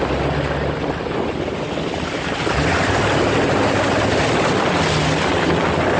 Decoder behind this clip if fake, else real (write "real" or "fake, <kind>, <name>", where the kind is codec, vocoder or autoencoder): real